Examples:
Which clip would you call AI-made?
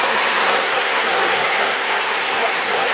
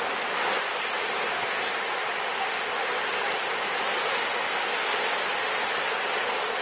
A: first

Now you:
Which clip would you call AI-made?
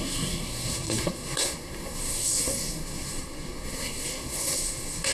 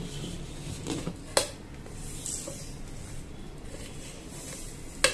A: first